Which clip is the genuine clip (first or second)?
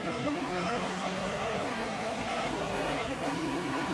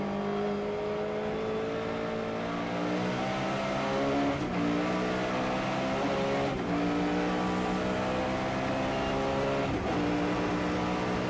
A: second